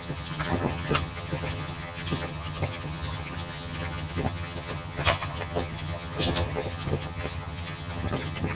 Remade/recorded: remade